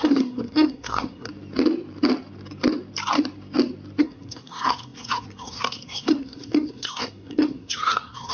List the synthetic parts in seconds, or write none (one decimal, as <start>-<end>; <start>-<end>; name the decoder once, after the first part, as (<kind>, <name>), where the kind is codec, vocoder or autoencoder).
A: 0.0-1.3 (codec, SNAC); 4.0-8.3